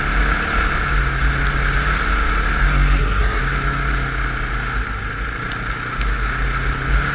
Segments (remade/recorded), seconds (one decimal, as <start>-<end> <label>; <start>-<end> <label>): 0.0-2.6 recorded; 2.6-3.4 remade; 3.4-7.1 recorded